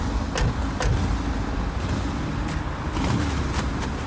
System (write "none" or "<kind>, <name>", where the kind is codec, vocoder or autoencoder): none